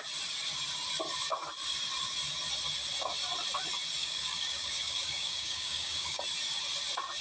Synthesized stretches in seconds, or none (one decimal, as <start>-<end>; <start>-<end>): 4.0-6.2